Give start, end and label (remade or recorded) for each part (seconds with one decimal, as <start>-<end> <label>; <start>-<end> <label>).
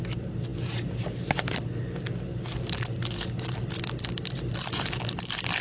0.0-5.6 recorded